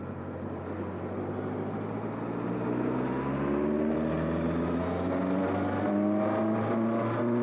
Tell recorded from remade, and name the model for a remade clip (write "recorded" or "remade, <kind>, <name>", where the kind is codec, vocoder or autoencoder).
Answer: recorded